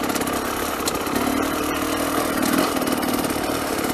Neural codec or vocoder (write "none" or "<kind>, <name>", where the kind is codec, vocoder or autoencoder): none